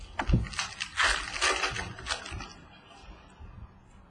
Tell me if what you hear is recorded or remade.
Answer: recorded